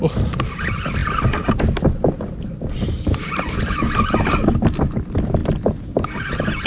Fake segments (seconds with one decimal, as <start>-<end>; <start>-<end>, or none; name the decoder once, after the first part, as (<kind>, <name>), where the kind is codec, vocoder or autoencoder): none